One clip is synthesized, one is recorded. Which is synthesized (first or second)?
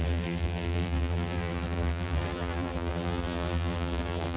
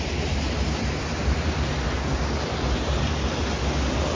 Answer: first